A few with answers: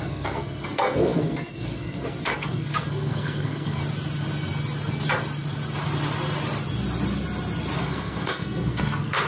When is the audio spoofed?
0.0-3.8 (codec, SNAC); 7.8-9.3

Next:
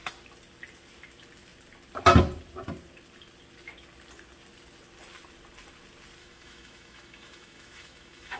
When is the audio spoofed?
6.2-8.4 (autoencoder, DAC-VAE)

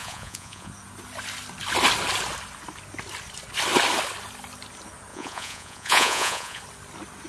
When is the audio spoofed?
0.0-0.7 (vocoder, Vocos); 5.1-6.6

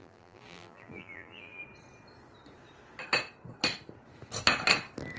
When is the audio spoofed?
0.0-1.6 (vocoder, BigVGAN v2)

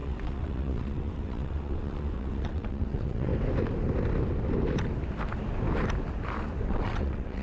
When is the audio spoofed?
0.0-3.3 (vocoder, WaveNeXt); 6.6-7.4

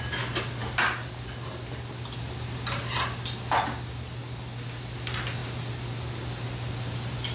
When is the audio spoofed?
none